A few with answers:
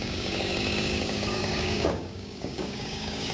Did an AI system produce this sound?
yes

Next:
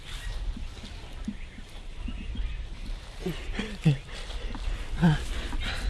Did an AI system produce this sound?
no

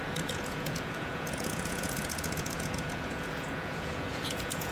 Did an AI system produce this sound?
yes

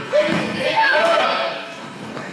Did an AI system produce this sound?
yes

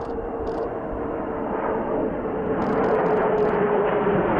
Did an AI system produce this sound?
yes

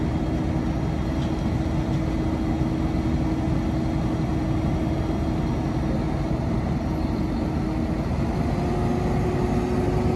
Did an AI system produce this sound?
no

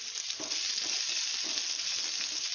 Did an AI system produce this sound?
no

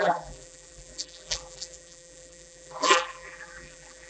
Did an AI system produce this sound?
yes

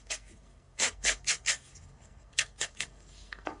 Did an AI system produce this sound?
yes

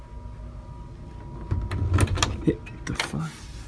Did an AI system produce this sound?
no